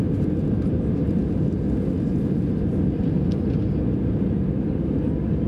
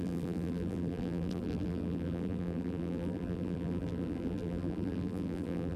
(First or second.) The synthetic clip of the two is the second